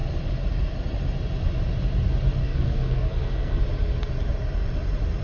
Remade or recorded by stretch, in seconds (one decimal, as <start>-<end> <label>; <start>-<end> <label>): 0.0-2.4 recorded; 2.4-3.6 remade; 3.6-5.2 recorded